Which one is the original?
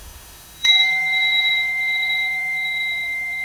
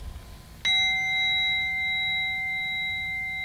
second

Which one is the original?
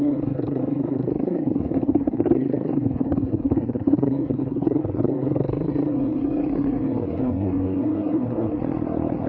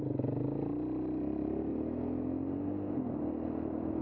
second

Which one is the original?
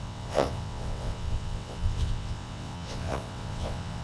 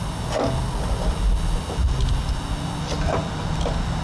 second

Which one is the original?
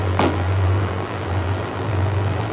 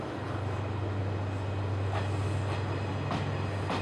second